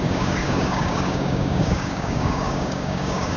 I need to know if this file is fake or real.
fake